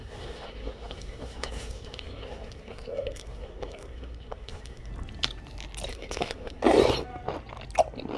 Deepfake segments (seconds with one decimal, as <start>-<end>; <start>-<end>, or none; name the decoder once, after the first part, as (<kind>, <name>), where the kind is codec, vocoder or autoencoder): 0.0-4.9 (codec, SNAC); 5.9-6.6